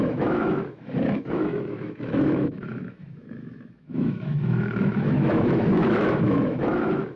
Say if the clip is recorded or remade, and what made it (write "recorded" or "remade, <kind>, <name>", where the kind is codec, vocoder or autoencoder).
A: remade, autoencoder, DAC-VAE